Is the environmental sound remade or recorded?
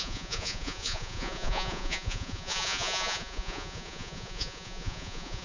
remade